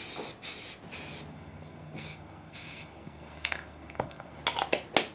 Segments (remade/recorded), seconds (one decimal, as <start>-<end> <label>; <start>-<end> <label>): 0.0-1.3 recorded; 1.3-4.4 remade; 4.4-5.1 recorded